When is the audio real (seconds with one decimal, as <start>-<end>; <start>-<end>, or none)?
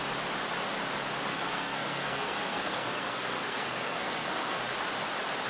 0.0-1.3; 4.6-5.5